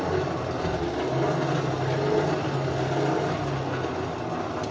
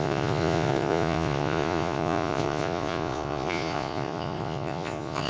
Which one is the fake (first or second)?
second